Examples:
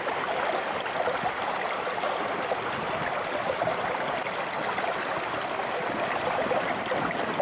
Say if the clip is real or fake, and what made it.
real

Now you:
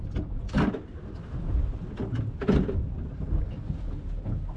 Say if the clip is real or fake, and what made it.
real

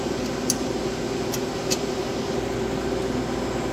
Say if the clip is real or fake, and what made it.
real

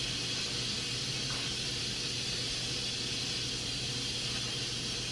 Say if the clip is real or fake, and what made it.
real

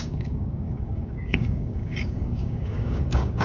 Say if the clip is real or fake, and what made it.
fake, codec, DAC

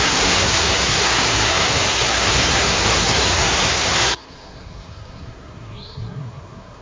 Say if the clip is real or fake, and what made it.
fake, codec, SNAC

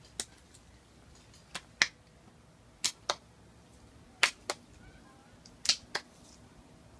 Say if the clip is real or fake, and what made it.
real